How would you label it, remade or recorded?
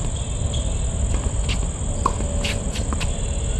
recorded